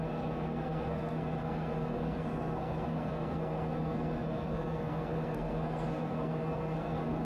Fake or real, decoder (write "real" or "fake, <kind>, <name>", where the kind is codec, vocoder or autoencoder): fake, codec, SNAC